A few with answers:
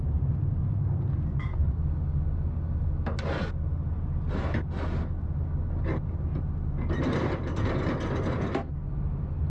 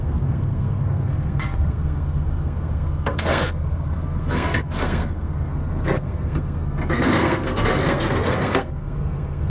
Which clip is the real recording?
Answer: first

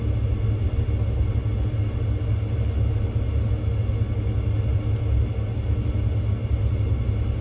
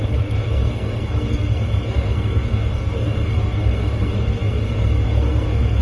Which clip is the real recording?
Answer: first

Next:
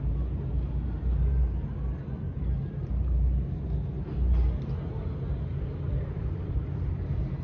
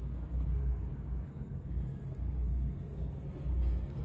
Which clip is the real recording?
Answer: first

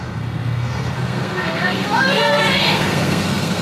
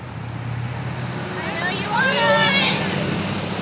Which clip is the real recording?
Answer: second